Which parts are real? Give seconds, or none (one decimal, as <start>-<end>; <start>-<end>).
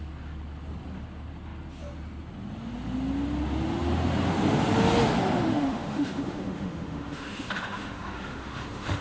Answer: 0.0-5.5